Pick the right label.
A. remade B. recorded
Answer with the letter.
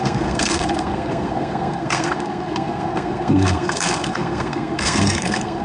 A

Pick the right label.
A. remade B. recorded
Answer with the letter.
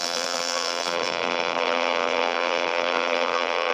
A